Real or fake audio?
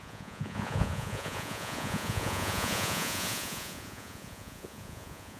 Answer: fake